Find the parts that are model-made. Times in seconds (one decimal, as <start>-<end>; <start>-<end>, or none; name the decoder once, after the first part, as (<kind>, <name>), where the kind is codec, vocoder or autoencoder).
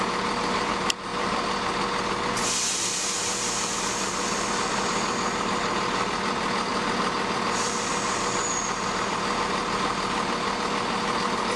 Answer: none